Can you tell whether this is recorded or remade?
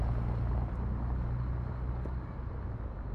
recorded